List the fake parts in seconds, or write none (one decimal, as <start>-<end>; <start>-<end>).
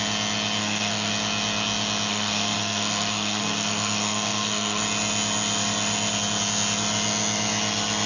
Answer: 0.6-1.1; 2.1-4.8